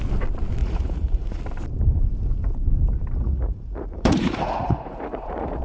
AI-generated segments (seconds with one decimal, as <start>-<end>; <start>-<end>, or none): 0.6-1.4; 3.2-5.6